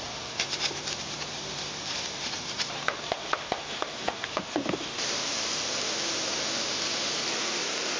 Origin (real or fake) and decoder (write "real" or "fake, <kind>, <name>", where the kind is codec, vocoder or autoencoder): real